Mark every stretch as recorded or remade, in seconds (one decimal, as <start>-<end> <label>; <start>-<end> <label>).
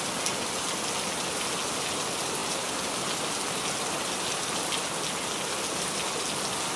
0.0-6.8 recorded